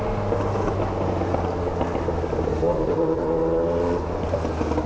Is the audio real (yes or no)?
yes